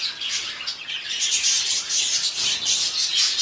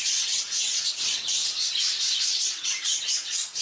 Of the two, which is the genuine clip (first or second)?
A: first